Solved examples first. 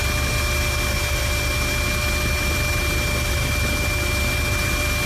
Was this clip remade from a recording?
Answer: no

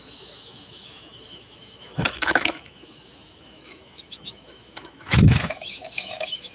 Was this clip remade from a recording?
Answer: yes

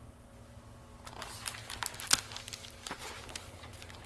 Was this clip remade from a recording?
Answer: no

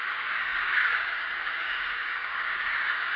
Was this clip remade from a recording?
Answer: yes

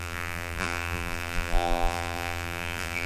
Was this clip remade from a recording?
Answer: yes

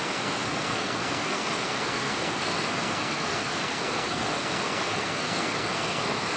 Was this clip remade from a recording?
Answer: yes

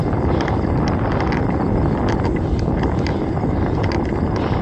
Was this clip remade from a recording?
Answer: no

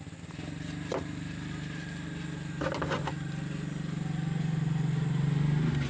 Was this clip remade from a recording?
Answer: no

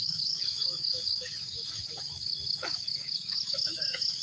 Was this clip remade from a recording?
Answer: yes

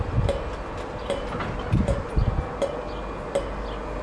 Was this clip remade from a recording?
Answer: no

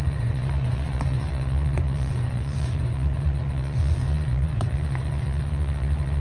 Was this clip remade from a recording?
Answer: yes